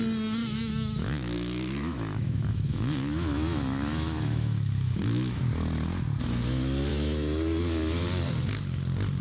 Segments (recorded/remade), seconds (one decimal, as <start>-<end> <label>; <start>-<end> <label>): 0.0-0.4 recorded; 0.4-5.4 remade; 5.4-6.9 recorded; 6.9-7.6 remade; 7.6-9.2 recorded